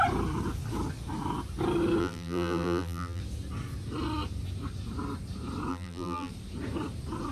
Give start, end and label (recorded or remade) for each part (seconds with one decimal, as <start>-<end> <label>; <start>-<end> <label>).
0.0-2.0 recorded; 2.0-3.2 remade; 3.2-5.7 recorded; 5.7-6.3 remade; 6.3-7.3 recorded